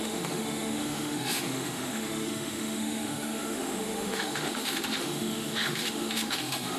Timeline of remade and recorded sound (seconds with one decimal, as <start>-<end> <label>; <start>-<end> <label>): 0.0-6.8 remade